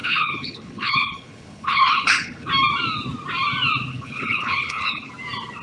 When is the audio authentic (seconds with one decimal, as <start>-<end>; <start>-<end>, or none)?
2.5-3.9; 5.1-5.6